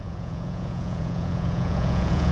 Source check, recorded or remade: remade